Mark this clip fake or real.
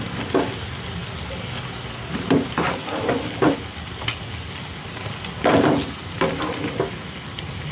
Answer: real